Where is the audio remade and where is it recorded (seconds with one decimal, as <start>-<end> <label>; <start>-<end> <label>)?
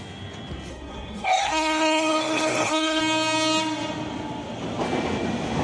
0.0-0.7 recorded; 0.7-3.0 remade; 3.0-5.6 recorded